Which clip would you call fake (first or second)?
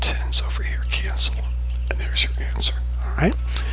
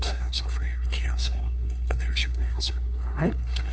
second